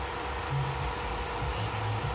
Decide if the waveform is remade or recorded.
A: recorded